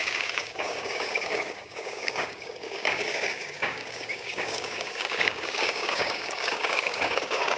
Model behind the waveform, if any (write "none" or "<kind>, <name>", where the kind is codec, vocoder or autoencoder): codec, DAC